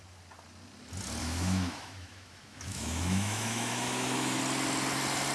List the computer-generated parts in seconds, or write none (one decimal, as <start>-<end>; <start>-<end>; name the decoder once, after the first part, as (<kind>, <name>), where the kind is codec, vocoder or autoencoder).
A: 1.2-4.4 (autoencoder, DAC-VAE)